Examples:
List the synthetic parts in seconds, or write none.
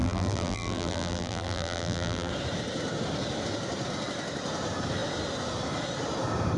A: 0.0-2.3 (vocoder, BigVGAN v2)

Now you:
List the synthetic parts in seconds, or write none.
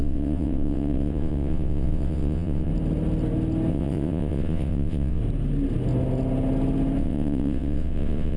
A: 0.0-2.7 (vocoder, WaveNeXt); 3.7-5.2; 7.0-8.4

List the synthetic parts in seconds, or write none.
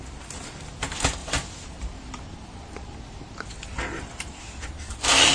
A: 1.2-4.4 (vocoder, BigVGAN v2)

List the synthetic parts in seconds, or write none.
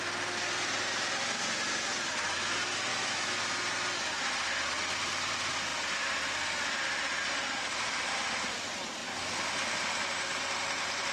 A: 2.9-3.4 (autoencoder, DAC-VAE)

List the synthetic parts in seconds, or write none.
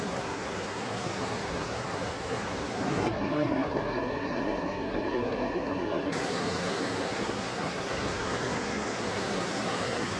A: 0.0-10.2 (codec, SNAC)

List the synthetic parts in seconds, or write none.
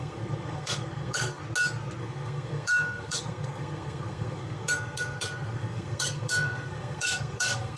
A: 0.0-1.4 (codec, SNAC); 2.0-7.8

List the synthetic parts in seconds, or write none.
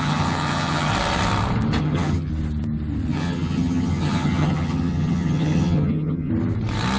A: 0.0-0.9 (vocoder, HiFi-GAN); 1.8-2.3; 3.1-6.3